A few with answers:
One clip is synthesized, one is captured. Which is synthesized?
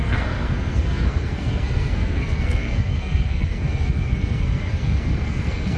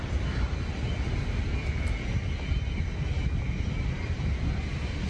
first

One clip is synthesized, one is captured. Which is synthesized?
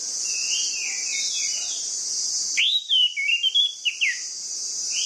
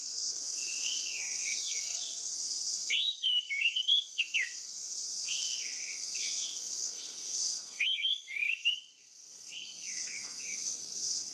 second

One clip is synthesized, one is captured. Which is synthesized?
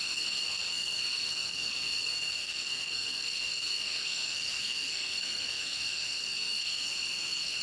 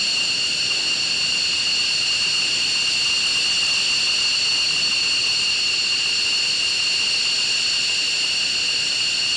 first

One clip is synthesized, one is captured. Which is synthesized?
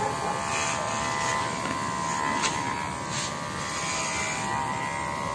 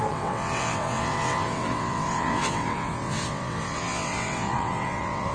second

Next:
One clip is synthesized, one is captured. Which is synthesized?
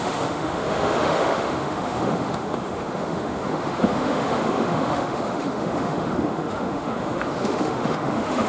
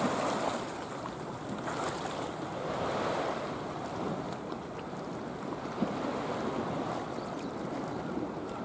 first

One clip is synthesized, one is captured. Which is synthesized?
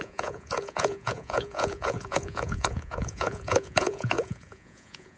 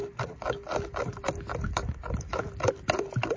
first